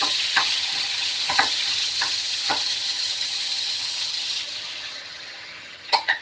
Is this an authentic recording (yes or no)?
no